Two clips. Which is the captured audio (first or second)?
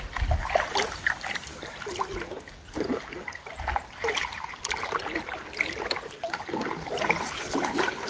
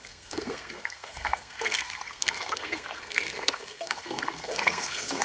first